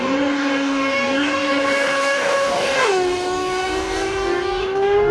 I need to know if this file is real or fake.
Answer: fake